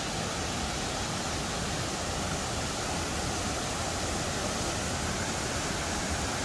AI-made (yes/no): no